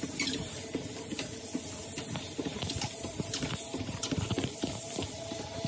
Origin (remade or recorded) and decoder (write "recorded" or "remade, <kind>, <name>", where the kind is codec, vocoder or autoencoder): recorded